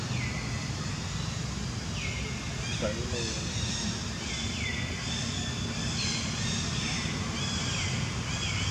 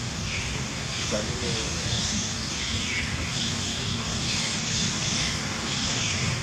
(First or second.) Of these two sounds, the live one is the first